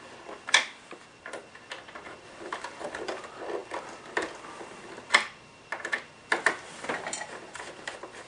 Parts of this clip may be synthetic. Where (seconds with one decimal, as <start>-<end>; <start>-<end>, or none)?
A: none